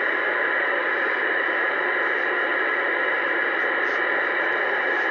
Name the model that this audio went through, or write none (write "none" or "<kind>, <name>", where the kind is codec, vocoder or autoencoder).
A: none